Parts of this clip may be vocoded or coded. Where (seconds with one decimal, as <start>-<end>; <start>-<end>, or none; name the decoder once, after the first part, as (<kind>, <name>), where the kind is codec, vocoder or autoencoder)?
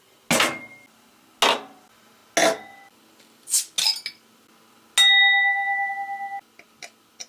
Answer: none